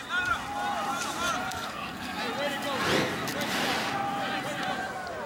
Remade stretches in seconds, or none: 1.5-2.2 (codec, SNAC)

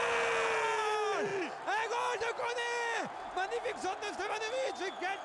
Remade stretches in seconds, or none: none

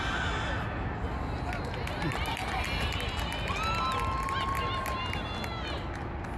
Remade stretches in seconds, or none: none

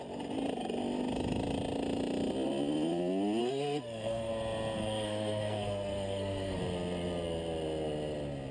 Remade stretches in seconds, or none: 3.4-4.3 (codec, SNAC); 4.8-6.6

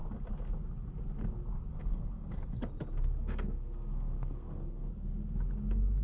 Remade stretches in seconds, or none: 1.7-2.6 (codec, SNAC); 3.2-4.9

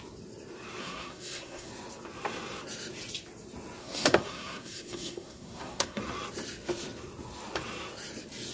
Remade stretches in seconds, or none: 0.8-1.7 (codec, SNAC); 3.8-6.0

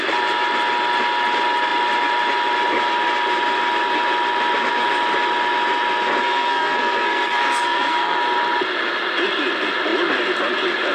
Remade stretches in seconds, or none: 6.2-8.2 (codec, SNAC)

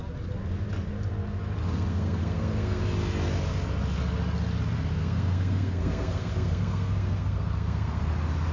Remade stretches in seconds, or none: 1.7-2.8 (codec, SNAC); 5.0-8.1